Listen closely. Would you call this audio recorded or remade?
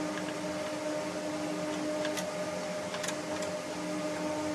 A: recorded